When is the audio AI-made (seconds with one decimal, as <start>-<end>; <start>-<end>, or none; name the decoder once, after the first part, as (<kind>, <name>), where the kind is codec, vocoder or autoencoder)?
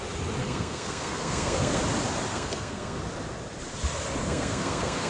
0.4-1.8 (codec, SNAC); 2.3-3.0; 4.2-5.1